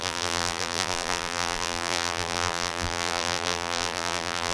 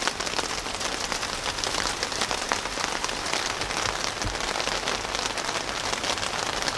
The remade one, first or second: first